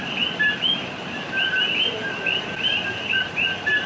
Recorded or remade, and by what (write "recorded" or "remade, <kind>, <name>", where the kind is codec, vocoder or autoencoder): recorded